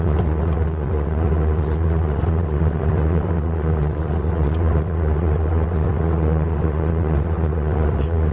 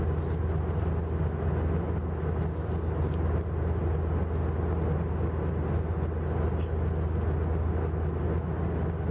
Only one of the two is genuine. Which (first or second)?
second